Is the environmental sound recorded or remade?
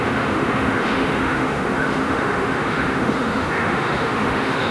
remade